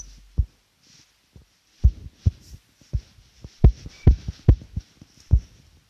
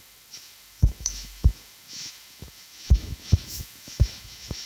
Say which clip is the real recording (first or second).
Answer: first